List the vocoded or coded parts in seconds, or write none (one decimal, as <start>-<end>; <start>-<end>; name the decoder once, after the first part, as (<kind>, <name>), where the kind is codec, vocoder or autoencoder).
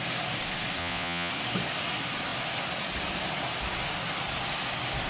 0.8-1.3 (vocoder, Vocos)